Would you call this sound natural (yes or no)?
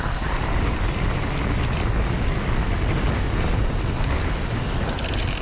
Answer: yes